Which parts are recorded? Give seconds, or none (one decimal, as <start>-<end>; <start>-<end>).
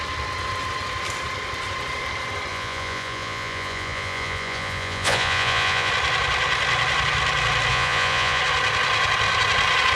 0.0-2.5; 5.9-7.7; 8.4-10.0